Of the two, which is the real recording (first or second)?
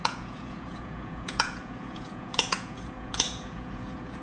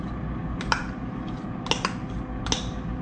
second